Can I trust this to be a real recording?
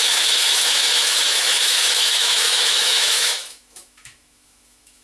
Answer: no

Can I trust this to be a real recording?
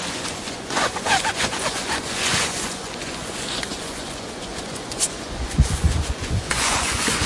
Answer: no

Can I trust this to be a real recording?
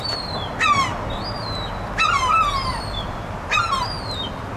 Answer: yes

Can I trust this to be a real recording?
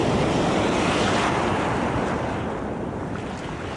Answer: yes